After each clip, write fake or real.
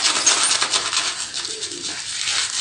real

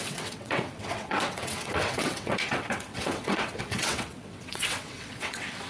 fake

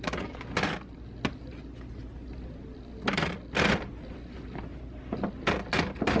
real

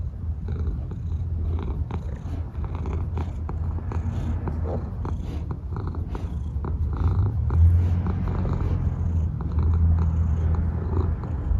real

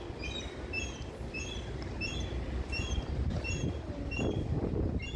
real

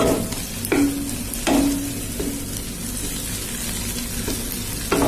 real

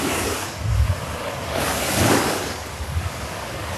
fake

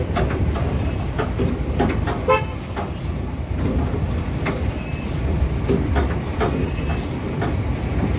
fake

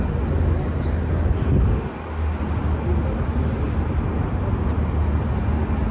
real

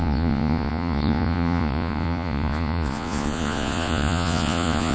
fake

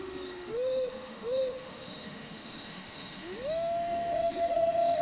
fake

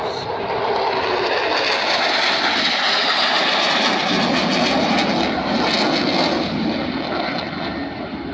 real